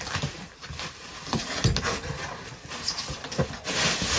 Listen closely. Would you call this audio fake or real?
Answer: real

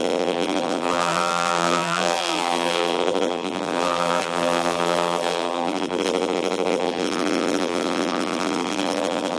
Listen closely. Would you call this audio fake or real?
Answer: fake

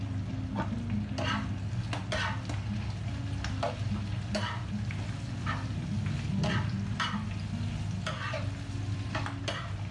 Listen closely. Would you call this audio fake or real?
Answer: real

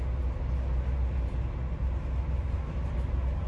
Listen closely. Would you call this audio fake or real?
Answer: real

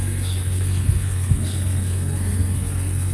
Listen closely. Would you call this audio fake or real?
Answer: fake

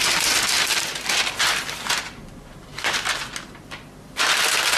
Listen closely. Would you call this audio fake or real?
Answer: real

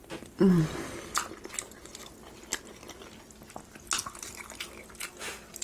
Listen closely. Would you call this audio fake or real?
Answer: real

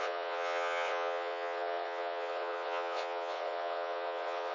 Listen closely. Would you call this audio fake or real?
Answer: fake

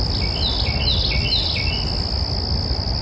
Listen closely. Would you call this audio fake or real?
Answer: real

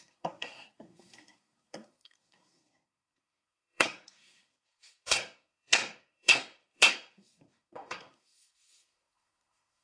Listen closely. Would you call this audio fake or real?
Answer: fake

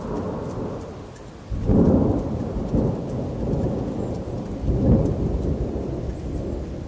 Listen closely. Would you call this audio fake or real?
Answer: real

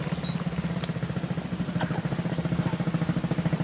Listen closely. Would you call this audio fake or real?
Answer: real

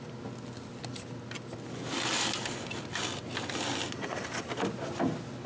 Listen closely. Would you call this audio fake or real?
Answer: real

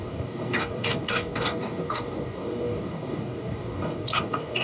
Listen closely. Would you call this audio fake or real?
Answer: fake